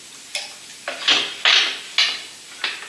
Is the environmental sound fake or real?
real